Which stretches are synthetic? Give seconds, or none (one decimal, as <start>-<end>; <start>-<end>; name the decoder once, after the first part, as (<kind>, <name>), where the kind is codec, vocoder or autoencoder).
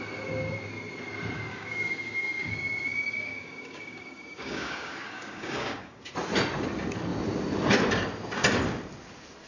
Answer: 1.5-6.1 (codec, DAC)